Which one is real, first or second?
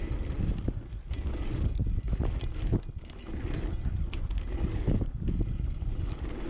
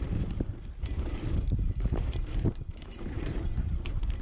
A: first